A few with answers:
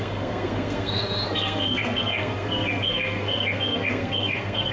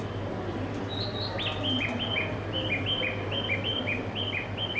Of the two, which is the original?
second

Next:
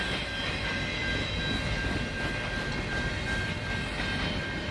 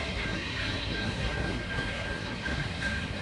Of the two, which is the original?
first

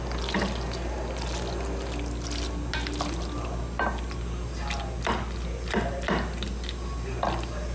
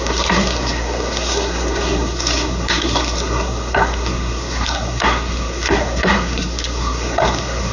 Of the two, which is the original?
first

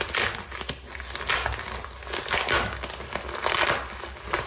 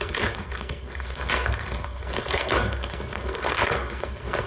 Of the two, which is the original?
first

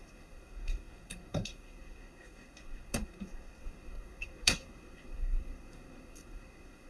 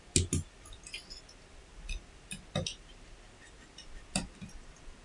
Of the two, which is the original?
second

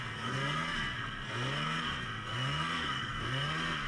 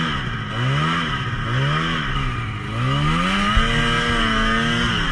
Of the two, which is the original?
second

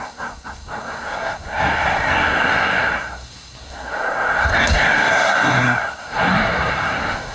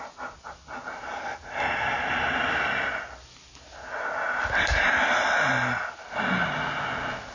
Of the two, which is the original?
second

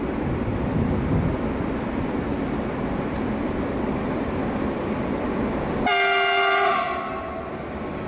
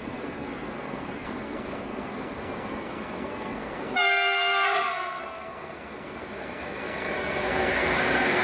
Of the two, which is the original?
first